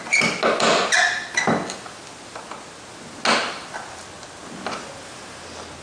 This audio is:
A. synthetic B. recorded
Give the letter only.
B